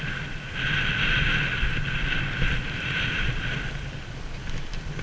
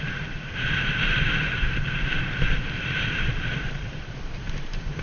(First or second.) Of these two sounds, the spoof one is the second